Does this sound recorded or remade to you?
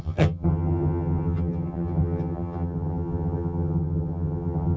remade